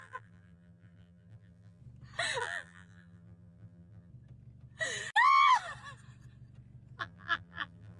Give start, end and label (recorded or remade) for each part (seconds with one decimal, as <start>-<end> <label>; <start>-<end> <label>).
0.0-1.8 remade; 1.8-2.4 recorded; 2.4-4.1 remade; 4.1-7.0 recorded; 7.0-8.0 remade